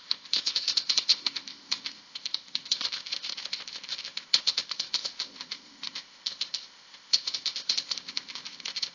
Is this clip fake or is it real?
fake